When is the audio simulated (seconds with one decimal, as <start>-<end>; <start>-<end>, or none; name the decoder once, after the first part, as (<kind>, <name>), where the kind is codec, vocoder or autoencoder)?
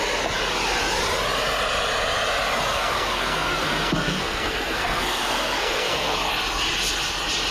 2.7-6.3 (codec, SNAC)